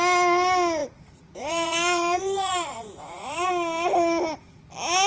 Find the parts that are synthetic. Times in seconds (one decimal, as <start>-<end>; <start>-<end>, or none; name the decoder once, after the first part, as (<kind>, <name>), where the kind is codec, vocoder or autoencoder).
0.8-3.5 (vocoder, Vocos)